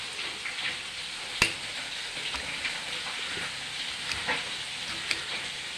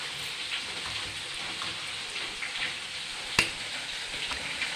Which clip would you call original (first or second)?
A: first